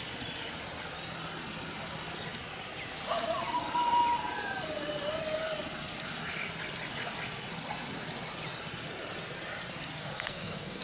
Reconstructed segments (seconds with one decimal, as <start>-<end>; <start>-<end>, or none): 10.0-10.8